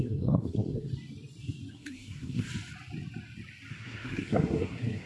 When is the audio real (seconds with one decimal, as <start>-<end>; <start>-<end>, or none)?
0.9-1.7; 2.5-3.7